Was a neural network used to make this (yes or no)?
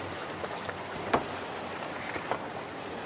no